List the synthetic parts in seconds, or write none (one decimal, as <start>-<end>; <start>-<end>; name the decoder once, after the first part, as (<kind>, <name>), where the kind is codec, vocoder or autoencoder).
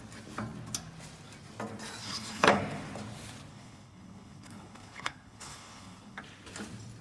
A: 2.0-2.6 (codec, HILCodec); 3.5-6.2